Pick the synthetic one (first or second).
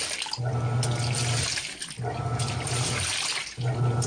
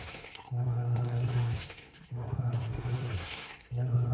second